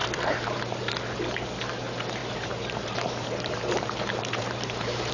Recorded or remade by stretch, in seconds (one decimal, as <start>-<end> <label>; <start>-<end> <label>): 0.0-0.9 remade; 0.9-2.2 recorded; 2.2-5.1 remade